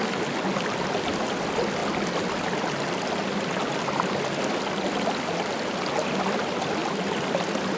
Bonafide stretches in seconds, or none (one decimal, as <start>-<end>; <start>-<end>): 0.0-7.8